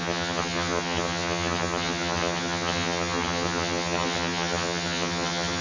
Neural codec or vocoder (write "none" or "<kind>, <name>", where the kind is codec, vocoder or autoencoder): vocoder, HiFi-GAN